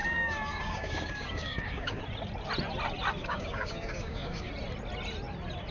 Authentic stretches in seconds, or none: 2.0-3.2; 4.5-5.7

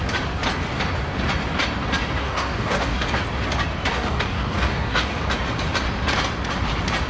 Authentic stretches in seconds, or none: 0.0-2.2; 3.2-3.9; 5.2-7.1

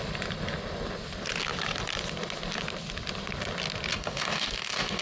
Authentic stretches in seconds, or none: 0.0-3.9

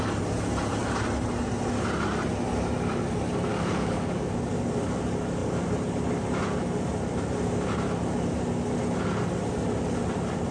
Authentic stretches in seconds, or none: 0.0-3.5; 5.0-10.5

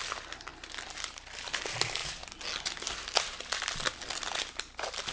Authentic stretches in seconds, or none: 0.0-5.1

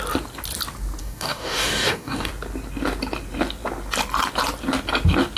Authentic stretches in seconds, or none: 0.0-1.0; 2.3-5.4

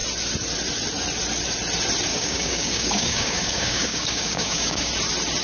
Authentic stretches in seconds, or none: 0.0-2.1; 4.9-5.4

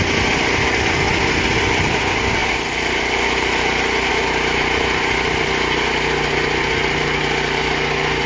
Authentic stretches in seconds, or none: 0.0-8.3